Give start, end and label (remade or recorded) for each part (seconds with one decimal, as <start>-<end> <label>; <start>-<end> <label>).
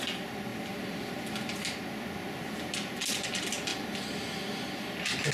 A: 0.0-5.3 recorded